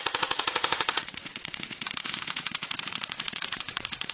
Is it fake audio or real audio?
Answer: fake